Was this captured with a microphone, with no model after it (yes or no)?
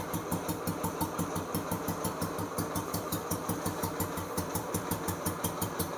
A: no